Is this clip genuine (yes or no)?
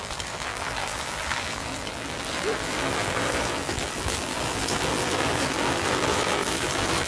no